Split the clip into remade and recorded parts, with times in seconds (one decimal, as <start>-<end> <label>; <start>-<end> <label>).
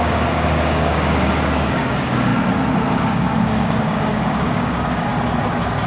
0.0-2.3 remade; 2.3-2.9 recorded; 2.9-5.1 remade; 5.1-5.9 recorded